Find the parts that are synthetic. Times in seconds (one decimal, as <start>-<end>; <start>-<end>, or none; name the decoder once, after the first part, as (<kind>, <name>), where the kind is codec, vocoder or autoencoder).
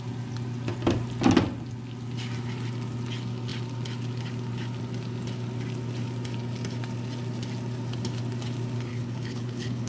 8.9-9.9 (codec, HILCodec)